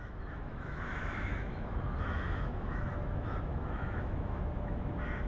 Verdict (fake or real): fake